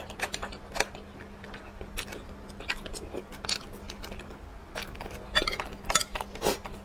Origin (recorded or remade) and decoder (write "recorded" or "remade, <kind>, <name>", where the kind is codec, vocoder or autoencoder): recorded